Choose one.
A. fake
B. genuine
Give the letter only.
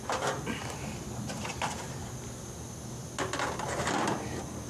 B